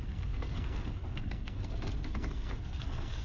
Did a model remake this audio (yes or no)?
yes